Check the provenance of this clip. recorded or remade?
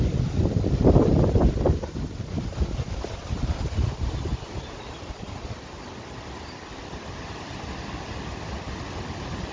recorded